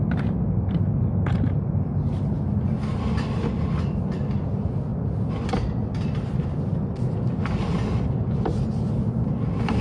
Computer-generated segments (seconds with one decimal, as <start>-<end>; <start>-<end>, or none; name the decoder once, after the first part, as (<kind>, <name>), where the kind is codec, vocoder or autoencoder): none